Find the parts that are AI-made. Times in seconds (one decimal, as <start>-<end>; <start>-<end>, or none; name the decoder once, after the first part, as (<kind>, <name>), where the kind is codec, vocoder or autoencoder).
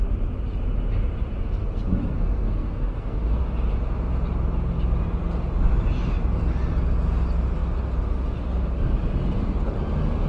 1.6-3.4 (codec, SNAC)